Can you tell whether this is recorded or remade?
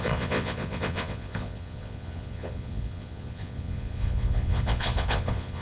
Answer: remade